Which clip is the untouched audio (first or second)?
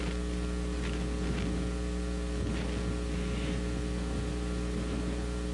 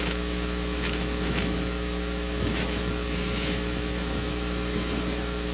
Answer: first